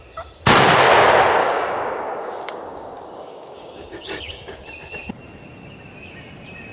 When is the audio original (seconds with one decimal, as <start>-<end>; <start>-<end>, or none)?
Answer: 0.0-1.4; 4.6-6.7